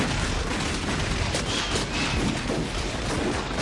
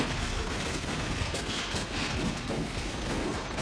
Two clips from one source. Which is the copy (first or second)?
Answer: second